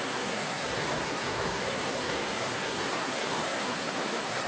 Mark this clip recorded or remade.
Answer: remade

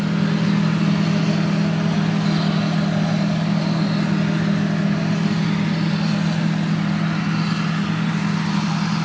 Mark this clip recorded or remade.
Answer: recorded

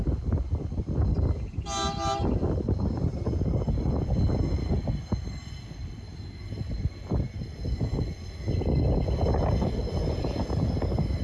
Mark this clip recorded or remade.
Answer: recorded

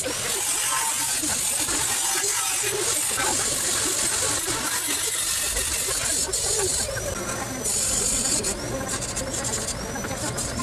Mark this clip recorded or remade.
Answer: recorded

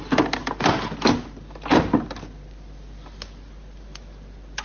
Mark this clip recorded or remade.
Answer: recorded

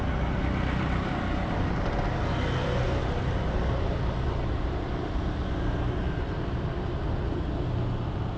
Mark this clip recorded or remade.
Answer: recorded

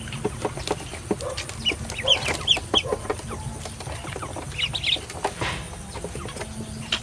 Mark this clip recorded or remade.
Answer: recorded